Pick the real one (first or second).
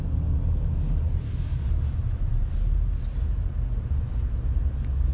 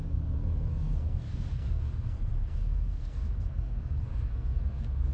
first